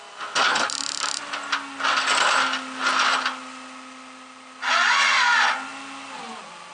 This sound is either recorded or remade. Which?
recorded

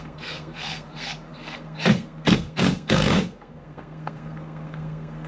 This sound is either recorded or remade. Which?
remade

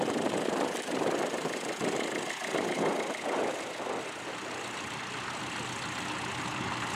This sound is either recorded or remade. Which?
recorded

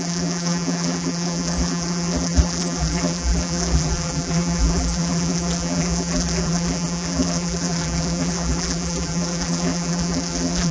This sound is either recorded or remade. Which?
remade